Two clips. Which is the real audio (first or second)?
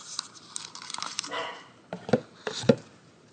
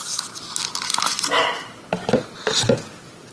second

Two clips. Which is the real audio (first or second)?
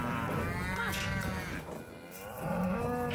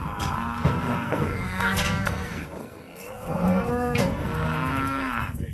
first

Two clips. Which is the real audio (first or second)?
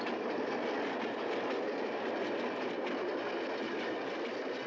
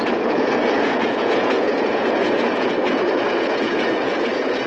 first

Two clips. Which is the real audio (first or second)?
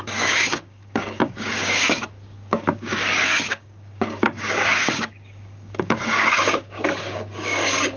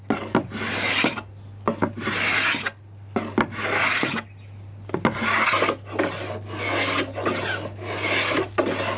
second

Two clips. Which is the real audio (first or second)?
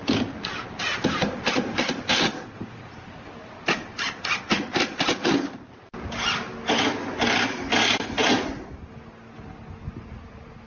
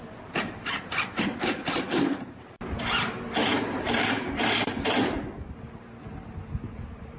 first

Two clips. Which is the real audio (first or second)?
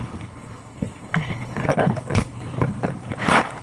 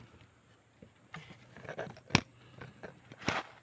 second